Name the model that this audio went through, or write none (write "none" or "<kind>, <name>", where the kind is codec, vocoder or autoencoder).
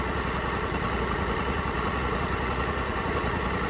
vocoder, Vocos